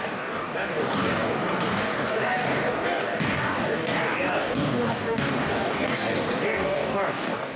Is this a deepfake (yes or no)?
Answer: yes